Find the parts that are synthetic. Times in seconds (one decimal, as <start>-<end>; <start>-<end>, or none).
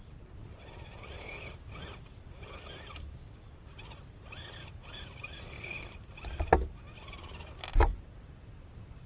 none